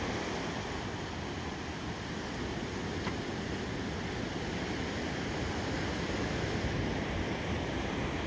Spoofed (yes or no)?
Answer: no